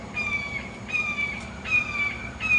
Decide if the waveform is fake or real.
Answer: fake